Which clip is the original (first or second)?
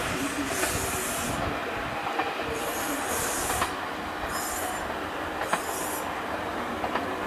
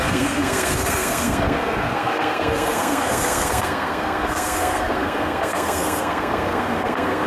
first